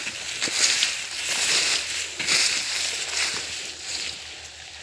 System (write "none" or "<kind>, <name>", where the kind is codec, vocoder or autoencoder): none